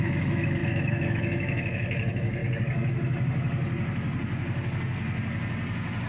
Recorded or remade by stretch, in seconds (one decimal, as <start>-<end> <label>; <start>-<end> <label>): 0.0-2.4 remade; 2.4-6.1 recorded